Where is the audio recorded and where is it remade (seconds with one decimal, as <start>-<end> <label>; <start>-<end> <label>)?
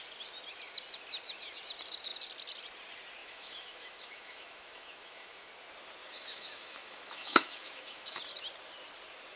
0.0-3.2 recorded; 3.2-5.5 remade; 5.5-6.0 recorded; 6.0-8.2 remade; 8.2-9.4 recorded